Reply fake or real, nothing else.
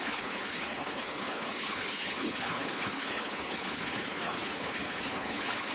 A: fake